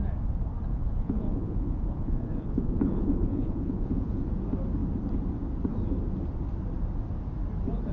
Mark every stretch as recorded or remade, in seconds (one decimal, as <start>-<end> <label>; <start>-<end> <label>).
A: 0.0-0.7 recorded; 0.7-4.3 remade; 4.3-7.9 recorded

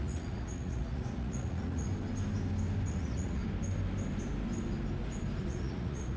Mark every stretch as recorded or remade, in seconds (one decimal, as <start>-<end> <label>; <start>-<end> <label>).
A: 0.0-1.9 remade; 1.9-2.9 recorded; 2.9-3.4 remade; 3.4-5.4 recorded; 5.4-6.2 remade

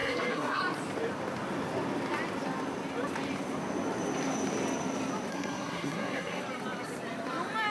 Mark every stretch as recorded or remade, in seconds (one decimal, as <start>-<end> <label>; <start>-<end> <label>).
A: 0.0-0.6 remade; 0.6-5.3 recorded; 5.3-6.4 remade; 6.4-7.7 recorded

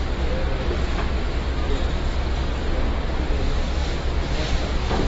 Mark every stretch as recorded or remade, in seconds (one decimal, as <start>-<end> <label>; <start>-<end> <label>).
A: 0.0-5.1 recorded

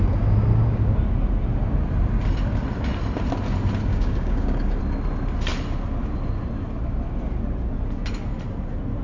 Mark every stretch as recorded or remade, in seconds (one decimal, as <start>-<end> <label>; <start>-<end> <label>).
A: 0.0-3.9 recorded; 3.9-4.8 remade; 4.8-9.0 recorded

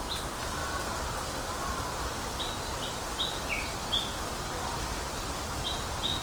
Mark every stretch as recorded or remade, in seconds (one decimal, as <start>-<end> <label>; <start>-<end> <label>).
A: 0.0-6.2 recorded

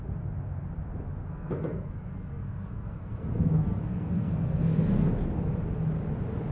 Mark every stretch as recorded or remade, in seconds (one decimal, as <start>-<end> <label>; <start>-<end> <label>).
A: 0.0-1.2 recorded; 1.2-5.1 remade; 5.1-6.5 recorded

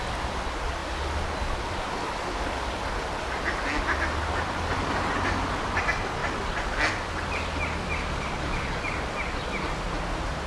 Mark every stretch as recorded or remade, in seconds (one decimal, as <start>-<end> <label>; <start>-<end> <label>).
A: 0.0-10.5 recorded